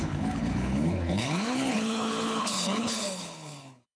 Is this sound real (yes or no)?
no